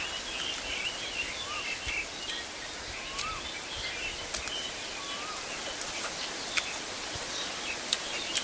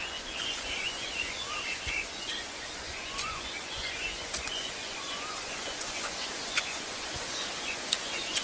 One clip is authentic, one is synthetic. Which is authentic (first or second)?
first